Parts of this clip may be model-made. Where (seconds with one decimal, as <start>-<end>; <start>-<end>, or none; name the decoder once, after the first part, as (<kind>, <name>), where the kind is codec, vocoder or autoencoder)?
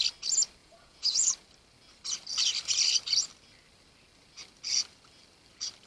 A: 0.6-1.3 (vocoder, Vocos)